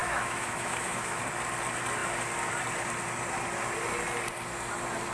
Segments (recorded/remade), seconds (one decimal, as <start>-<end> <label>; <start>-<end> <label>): 0.0-1.2 remade; 1.2-5.1 recorded